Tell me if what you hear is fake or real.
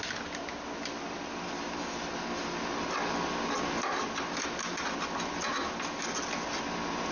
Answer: real